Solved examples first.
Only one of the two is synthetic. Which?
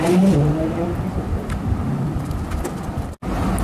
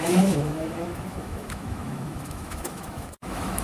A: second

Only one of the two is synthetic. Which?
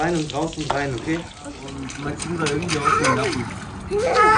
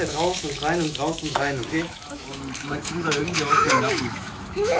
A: second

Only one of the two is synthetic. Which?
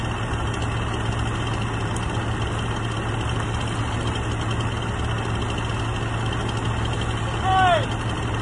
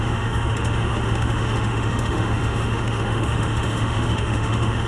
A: second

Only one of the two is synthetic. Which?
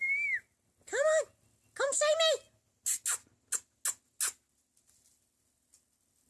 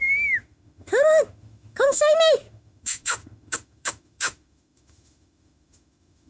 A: second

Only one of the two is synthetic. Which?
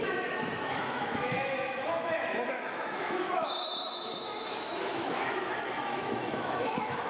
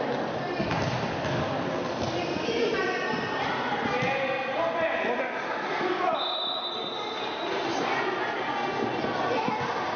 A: first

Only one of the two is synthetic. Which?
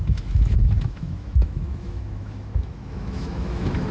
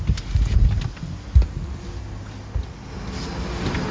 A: first